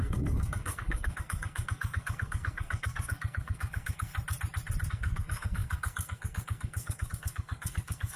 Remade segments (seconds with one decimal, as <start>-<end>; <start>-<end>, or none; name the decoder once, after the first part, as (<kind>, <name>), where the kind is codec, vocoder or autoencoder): 0.0-4.1 (codec, SNAC); 4.9-8.2